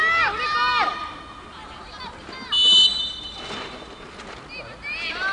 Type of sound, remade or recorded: recorded